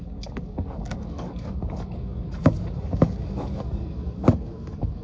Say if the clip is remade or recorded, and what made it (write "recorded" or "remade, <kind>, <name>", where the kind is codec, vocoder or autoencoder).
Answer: remade, codec, DAC